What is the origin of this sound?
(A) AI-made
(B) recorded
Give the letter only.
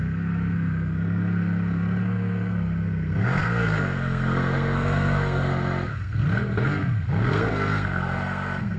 A